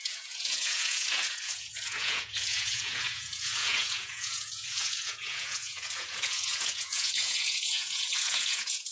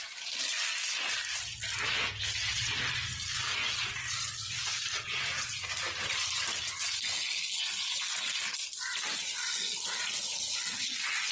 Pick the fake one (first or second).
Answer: first